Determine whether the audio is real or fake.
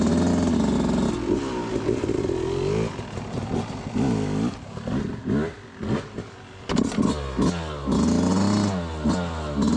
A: real